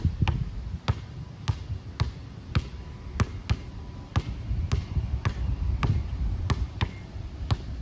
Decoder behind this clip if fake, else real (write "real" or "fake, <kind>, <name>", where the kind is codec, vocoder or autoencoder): real